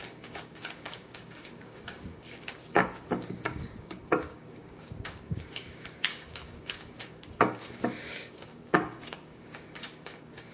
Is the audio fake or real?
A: fake